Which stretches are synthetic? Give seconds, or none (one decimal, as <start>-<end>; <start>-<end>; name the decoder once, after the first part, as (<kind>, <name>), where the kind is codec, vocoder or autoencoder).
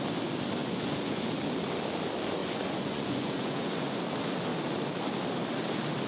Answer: 0.6-1.2 (vocoder, Vocos); 2.4-4.0